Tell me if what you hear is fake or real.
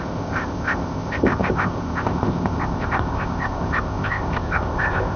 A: fake